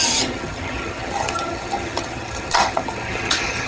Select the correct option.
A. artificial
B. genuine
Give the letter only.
A